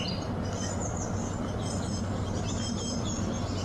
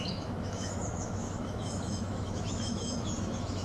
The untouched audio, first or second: first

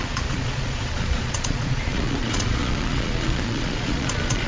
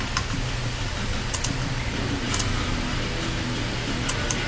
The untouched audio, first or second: second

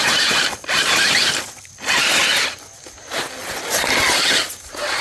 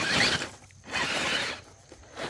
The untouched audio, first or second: first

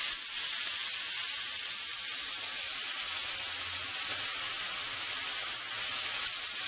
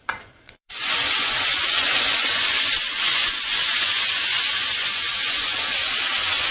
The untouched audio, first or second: first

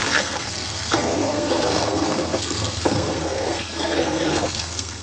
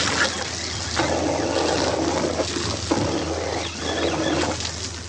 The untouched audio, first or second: second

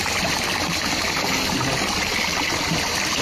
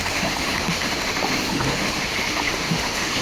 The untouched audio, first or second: first